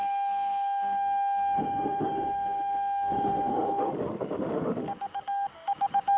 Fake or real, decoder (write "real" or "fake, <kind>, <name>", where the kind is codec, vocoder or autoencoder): fake, autoencoder, DAC-VAE